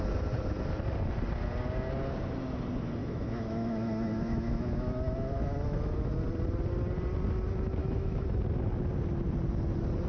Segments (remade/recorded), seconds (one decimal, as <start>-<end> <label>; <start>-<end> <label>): 0.0-3.0 recorded; 3.0-6.1 remade; 6.1-7.8 recorded; 7.8-8.4 remade; 8.4-10.1 recorded